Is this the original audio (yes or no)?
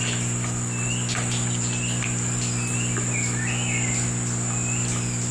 yes